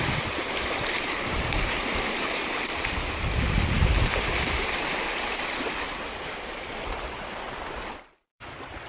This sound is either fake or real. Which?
fake